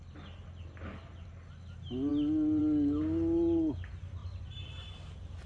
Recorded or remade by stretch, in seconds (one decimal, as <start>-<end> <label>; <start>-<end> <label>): 0.0-5.5 recorded